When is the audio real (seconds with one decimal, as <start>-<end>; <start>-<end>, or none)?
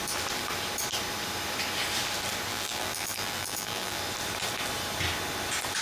0.0-2.5; 4.0-5.8